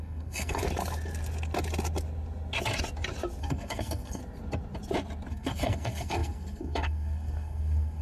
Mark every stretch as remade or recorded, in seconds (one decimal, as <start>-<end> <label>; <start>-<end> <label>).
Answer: 0.0-0.6 remade; 0.6-3.4 recorded; 3.4-4.2 remade; 4.2-5.3 recorded; 5.3-8.0 remade